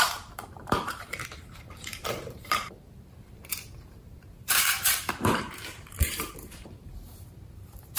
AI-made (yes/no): yes